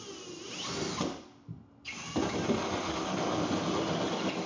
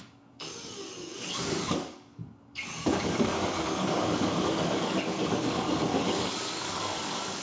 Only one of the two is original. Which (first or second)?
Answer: first